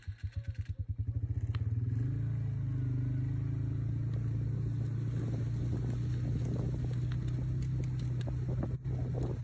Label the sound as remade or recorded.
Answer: recorded